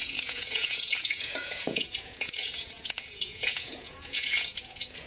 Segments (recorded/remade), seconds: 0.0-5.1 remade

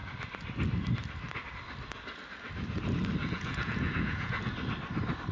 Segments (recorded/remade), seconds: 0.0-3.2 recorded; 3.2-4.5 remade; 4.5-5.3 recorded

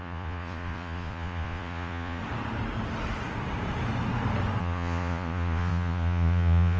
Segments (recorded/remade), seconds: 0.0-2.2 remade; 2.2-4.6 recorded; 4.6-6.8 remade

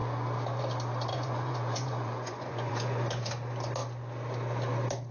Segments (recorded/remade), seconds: 0.0-1.1 recorded; 1.1-3.3 remade; 3.3-5.1 recorded

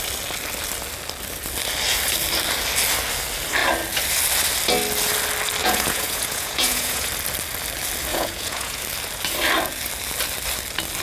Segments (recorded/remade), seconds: 0.0-5.6 recorded; 5.6-7.1 remade; 7.1-8.1 recorded; 8.1-8.8 remade; 8.8-11.0 recorded